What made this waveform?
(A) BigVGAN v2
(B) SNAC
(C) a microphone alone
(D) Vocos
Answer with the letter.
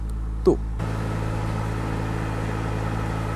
C